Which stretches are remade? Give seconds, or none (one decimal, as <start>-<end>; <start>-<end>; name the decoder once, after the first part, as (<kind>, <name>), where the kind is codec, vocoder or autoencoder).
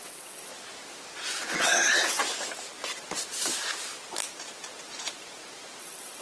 0.0-0.5 (vocoder, WaveNeXt); 1.5-2.2; 5.8-6.2